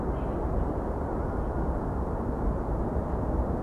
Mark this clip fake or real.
real